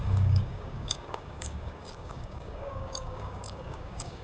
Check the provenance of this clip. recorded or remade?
remade